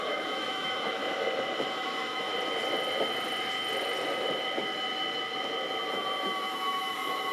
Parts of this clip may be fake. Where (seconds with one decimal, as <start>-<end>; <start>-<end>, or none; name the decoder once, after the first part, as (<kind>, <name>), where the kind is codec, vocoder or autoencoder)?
0.0-1.0 (autoencoder, DAC-VAE); 1.7-2.3; 5.9-7.3